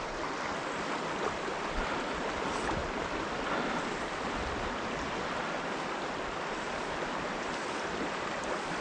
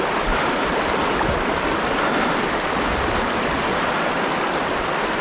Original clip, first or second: second